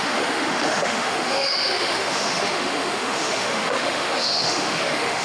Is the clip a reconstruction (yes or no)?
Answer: yes